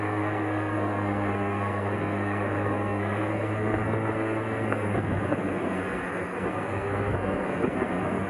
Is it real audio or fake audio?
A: fake